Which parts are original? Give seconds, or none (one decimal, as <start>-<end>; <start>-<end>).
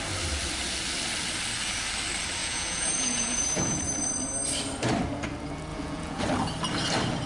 0.0-2.4; 3.8-5.7; 6.2-7.3